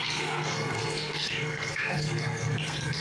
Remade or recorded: remade